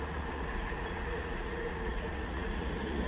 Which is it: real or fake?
fake